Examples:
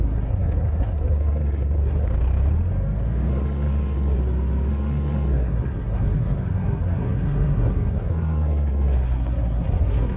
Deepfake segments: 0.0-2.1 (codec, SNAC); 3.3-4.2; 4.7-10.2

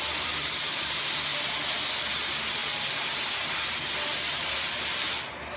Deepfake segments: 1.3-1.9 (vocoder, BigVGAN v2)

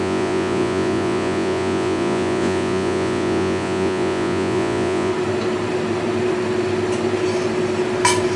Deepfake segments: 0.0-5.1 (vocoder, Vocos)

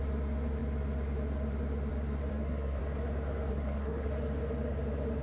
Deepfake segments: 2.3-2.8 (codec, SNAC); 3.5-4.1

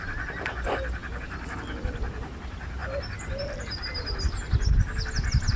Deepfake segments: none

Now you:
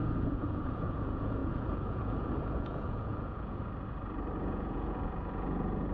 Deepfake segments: 0.0-3.6 (vocoder, Vocos); 4.4-5.9

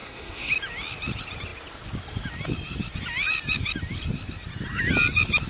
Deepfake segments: 0.0-0.5 (codec, SNAC)

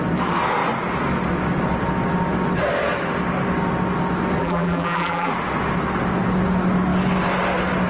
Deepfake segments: 4.4-5.3 (vocoder, BigVGAN v2)